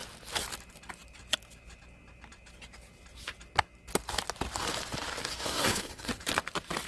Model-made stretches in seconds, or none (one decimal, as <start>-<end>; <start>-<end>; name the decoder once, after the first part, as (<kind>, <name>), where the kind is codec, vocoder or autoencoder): 5.3-6.1 (codec, SNAC)